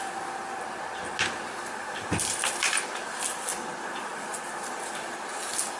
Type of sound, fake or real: real